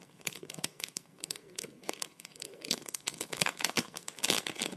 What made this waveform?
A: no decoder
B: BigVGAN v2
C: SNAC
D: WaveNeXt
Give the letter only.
C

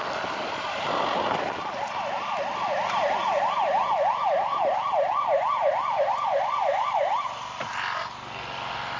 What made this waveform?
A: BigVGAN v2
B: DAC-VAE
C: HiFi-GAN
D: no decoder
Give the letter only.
D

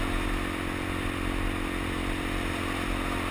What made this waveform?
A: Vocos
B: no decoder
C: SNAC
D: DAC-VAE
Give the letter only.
B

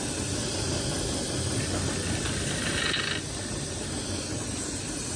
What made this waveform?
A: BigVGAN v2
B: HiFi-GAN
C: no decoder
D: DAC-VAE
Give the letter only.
C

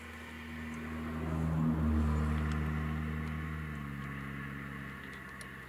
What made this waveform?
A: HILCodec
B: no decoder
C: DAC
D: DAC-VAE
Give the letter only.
B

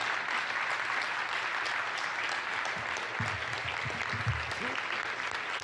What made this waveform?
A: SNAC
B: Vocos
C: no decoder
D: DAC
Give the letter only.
C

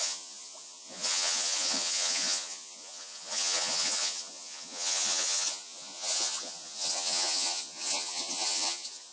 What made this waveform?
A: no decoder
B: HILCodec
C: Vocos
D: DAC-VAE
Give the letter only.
C